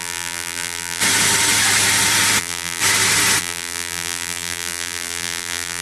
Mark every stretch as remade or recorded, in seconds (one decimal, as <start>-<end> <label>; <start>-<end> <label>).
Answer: 0.0-1.0 remade; 1.0-2.4 recorded; 2.4-2.8 remade; 2.8-3.4 recorded; 3.4-5.8 remade